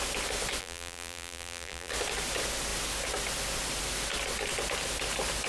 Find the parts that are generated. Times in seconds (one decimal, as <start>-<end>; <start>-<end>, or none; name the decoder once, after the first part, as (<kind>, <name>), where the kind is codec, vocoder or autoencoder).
0.6-1.9 (vocoder, BigVGAN v2)

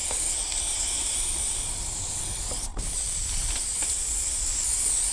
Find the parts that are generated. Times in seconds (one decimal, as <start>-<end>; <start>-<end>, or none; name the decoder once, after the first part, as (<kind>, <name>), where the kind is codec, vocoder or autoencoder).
0.0-2.0 (vocoder, BigVGAN v2); 2.7-4.5

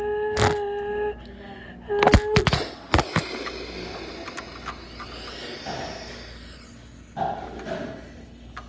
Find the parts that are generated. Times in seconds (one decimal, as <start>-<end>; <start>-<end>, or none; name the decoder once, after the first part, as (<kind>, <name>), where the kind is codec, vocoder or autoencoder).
none

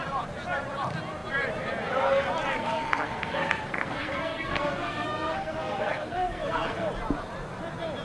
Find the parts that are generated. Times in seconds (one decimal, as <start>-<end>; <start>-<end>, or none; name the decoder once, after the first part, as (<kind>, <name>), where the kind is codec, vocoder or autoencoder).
2.6-6.9 (codec, SNAC)